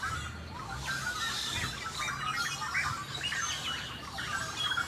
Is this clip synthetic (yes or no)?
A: no